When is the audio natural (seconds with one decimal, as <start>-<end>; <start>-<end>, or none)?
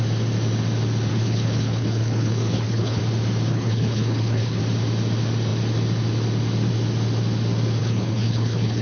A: 0.0-1.1; 3.0-3.5; 4.6-7.8